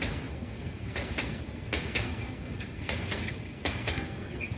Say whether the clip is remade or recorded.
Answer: remade